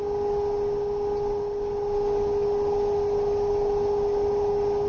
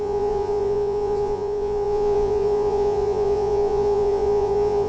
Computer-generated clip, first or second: second